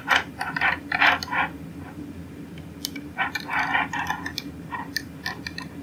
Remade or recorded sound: remade